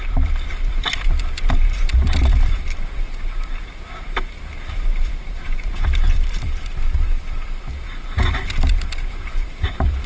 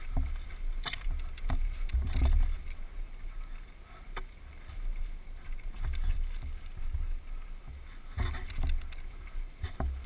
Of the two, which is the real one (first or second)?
second